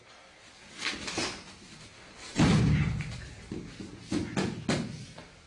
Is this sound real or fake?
real